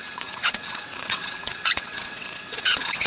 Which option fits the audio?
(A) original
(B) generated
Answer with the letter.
B